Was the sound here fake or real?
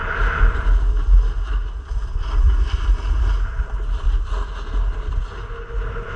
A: real